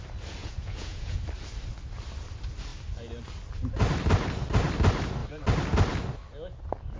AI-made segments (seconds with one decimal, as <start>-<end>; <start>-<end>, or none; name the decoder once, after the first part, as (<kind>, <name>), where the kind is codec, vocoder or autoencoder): 0.4-1.2 (vocoder, Vocos)